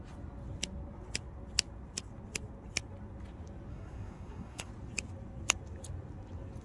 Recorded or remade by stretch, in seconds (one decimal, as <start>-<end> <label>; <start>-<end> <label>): 0.0-3.7 recorded; 3.7-4.7 remade; 4.7-6.6 recorded